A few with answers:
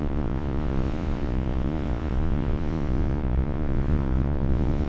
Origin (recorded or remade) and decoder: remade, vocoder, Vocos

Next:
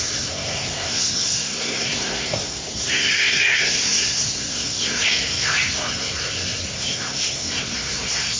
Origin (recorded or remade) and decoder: remade, codec, SNAC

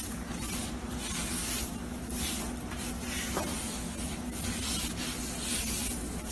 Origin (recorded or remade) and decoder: recorded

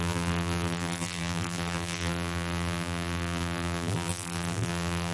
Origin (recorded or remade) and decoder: remade, vocoder, BigVGAN v2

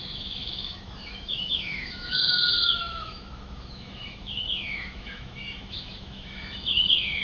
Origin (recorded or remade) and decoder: remade, autoencoder, DAC-VAE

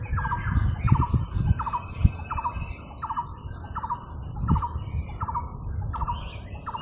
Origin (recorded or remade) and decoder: recorded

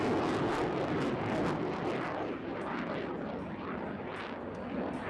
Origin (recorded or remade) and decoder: recorded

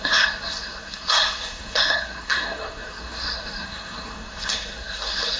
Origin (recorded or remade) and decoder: remade, codec, SNAC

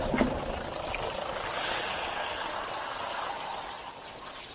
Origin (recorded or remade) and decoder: recorded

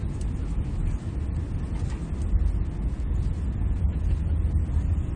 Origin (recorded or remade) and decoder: recorded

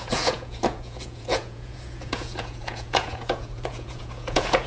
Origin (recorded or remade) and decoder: remade, vocoder, Vocos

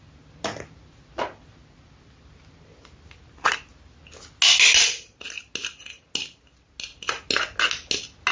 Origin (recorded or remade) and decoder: recorded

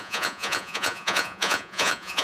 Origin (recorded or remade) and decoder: remade, vocoder, Vocos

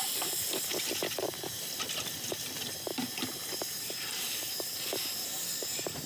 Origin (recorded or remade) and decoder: recorded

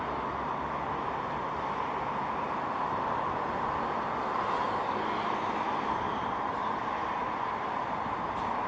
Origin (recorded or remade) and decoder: recorded